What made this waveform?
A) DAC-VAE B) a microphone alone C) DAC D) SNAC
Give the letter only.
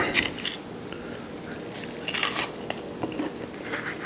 B